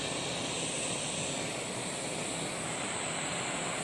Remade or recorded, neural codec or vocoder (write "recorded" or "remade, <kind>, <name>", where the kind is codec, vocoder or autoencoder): recorded